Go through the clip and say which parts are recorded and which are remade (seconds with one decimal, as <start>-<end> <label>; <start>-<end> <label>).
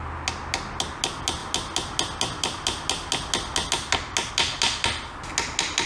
0.0-5.9 recorded